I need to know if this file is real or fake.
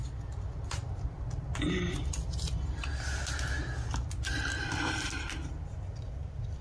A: real